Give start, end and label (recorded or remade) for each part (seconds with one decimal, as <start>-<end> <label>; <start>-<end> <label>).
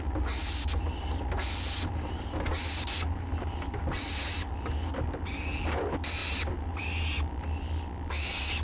0.0-8.6 recorded